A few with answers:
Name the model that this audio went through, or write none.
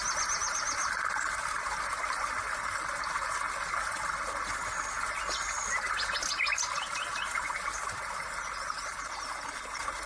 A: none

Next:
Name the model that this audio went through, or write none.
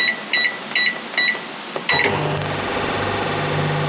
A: none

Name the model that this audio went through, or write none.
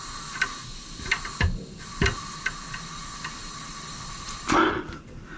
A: none